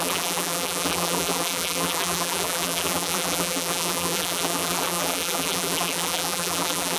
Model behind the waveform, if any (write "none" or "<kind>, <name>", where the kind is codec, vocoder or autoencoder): vocoder, BigVGAN v2